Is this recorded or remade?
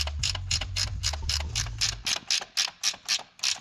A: recorded